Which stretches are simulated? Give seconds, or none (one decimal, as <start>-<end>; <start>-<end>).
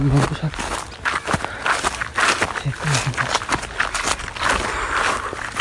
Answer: none